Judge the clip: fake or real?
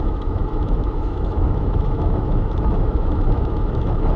fake